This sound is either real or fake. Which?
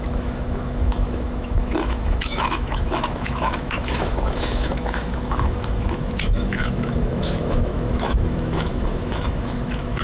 fake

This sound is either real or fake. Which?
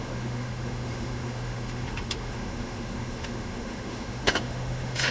fake